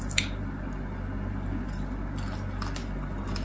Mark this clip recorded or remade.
recorded